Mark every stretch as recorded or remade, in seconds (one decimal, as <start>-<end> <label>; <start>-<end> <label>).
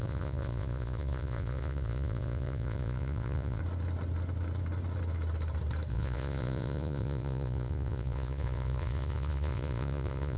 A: 0.0-3.6 remade; 3.6-5.9 recorded; 5.9-10.4 remade